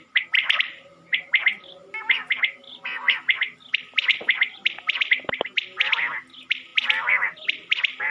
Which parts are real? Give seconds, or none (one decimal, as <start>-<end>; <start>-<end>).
0.0-8.1